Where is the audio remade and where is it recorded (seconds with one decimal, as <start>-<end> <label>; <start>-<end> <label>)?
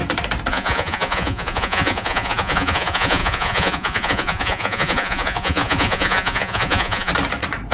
0.0-0.5 recorded; 0.5-7.1 remade; 7.1-7.7 recorded